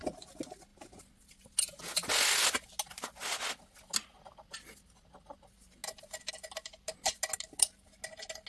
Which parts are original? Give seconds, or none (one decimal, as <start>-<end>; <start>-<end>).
0.0-8.5